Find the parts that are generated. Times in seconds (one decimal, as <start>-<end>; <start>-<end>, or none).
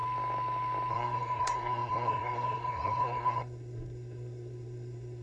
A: 0.9-5.2